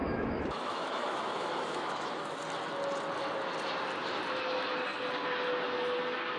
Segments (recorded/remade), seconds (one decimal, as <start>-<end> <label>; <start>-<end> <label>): 0.0-2.4 remade; 2.4-6.4 recorded